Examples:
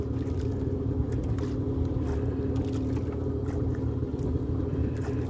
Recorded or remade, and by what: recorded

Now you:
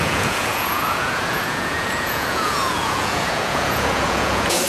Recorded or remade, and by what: remade, vocoder, Vocos